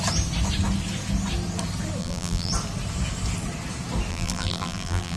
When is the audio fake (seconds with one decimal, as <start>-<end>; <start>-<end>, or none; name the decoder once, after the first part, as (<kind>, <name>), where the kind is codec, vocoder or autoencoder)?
2.0-2.5 (vocoder, BigVGAN v2); 4.1-5.2